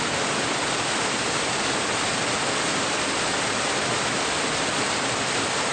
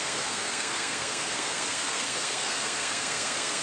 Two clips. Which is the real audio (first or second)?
first